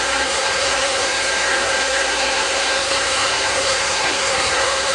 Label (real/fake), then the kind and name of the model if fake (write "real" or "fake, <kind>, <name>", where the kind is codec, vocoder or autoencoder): fake, codec, SNAC